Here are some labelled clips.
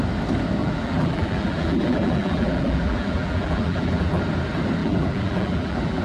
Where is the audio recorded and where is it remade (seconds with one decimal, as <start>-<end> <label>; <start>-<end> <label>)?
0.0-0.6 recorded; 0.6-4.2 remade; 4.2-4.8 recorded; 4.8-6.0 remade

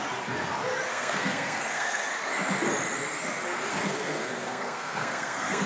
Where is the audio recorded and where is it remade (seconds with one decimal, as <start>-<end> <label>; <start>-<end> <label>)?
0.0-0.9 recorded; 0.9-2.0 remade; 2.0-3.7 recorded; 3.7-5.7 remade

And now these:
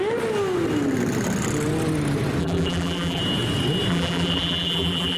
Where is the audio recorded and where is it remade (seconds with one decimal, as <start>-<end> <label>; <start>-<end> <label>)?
0.0-2.4 recorded; 2.4-3.2 remade; 3.2-3.9 recorded; 3.9-5.2 remade

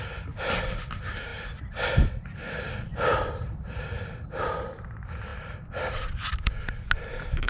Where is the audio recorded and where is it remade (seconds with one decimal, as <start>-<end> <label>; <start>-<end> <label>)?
0.0-3.1 recorded; 3.1-4.4 remade; 4.4-7.5 recorded

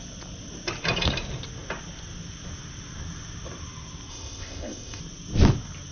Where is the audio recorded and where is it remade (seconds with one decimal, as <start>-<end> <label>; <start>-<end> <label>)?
0.0-4.1 recorded; 4.1-5.0 remade; 5.0-5.9 recorded

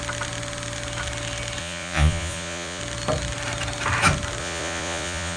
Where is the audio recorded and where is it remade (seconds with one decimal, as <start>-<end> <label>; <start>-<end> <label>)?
0.0-1.6 recorded; 1.6-2.8 remade; 2.8-4.4 recorded; 4.4-5.4 remade